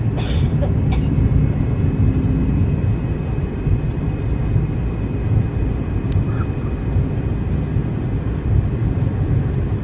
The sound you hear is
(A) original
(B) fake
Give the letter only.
A